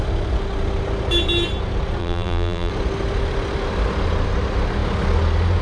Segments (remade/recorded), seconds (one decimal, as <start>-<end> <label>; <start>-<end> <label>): 0.0-2.0 recorded; 2.0-2.7 remade; 2.7-5.6 recorded